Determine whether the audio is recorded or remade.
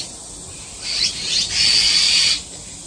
recorded